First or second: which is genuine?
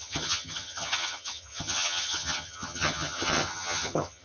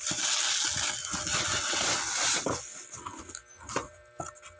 second